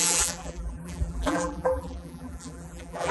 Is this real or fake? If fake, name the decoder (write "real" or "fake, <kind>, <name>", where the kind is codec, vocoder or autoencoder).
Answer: fake, vocoder, BigVGAN v2